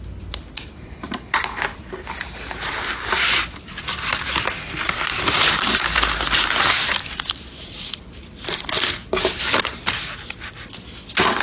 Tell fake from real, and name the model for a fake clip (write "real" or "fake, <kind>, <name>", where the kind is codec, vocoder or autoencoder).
real